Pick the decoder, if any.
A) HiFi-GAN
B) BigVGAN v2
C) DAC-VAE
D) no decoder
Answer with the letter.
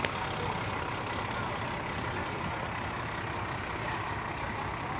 D